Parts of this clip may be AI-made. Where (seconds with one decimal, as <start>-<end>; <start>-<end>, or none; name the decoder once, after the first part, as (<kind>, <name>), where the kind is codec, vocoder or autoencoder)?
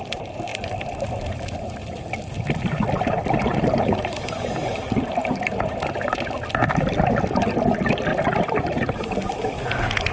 0.5-5.6 (vocoder, BigVGAN v2); 8.1-9.0